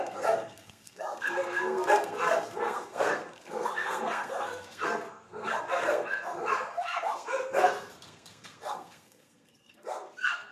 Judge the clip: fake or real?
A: fake